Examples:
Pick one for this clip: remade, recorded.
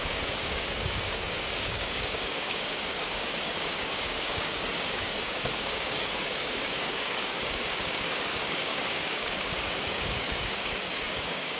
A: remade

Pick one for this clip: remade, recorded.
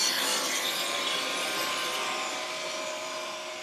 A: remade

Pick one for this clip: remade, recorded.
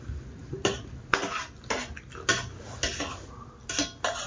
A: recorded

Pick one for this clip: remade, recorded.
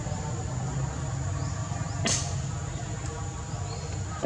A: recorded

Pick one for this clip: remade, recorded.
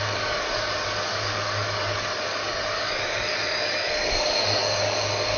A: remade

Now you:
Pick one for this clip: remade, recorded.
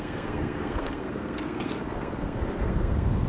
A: remade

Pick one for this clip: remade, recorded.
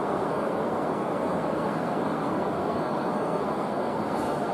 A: remade